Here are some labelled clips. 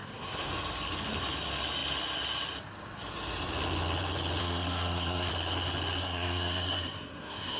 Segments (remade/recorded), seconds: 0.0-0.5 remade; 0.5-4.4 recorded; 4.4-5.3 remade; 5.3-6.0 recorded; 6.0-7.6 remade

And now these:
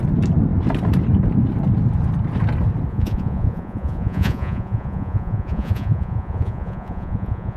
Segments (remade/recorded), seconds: 0.0-2.9 recorded; 2.9-7.6 remade